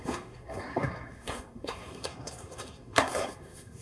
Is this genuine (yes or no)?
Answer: no